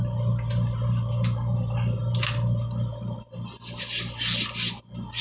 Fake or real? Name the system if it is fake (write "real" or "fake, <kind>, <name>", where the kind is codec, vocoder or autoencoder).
real